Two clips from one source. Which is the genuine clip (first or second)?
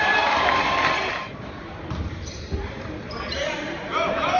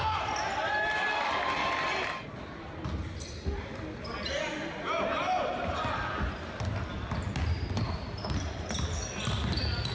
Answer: second